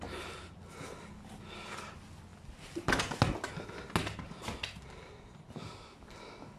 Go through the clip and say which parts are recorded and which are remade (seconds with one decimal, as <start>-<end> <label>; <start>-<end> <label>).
0.0-6.6 recorded